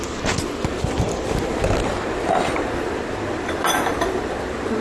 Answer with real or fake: real